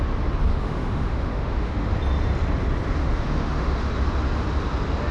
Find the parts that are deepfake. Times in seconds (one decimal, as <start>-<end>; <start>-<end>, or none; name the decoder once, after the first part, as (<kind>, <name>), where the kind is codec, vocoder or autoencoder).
0.5-1.9 (autoencoder, DAC-VAE); 3.0-3.9